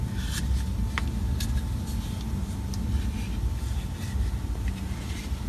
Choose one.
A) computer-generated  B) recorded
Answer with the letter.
B